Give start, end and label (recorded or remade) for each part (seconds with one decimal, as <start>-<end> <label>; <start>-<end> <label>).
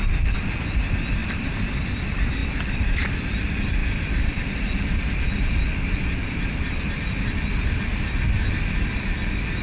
0.0-1.2 recorded; 1.2-1.7 remade; 1.7-2.4 recorded; 2.4-3.1 remade; 3.1-3.8 recorded; 3.8-6.9 remade; 6.9-9.6 recorded